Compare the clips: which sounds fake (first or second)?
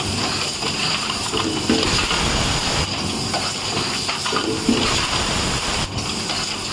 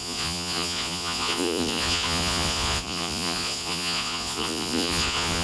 second